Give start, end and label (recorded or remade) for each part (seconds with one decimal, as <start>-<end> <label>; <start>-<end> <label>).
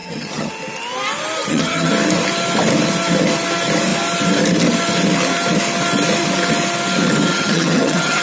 0.0-0.5 remade; 0.5-1.4 recorded; 1.4-1.9 remade; 1.9-7.3 recorded; 7.3-8.2 remade